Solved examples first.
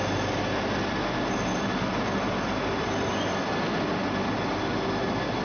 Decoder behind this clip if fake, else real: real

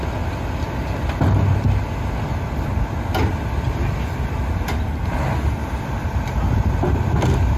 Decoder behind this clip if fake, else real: real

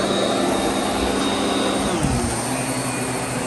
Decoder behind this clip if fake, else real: real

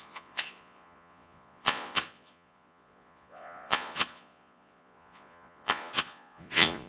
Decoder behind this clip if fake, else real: fake, vocoder, Vocos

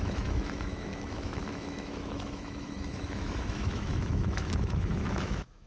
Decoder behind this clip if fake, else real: fake, autoencoder, DAC-VAE